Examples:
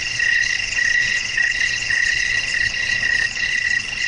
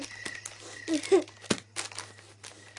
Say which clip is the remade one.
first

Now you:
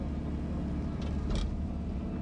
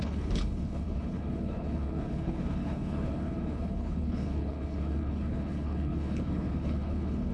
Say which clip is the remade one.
second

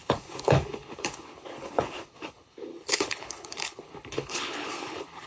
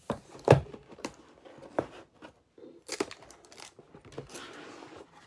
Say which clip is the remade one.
first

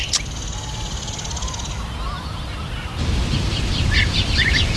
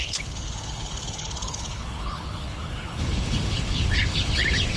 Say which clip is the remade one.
second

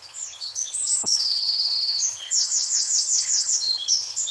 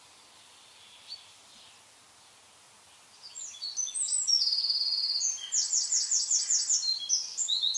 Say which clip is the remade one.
first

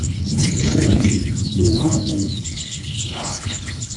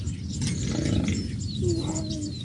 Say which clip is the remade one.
first